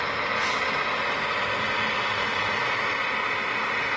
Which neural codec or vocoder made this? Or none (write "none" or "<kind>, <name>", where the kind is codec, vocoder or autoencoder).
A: none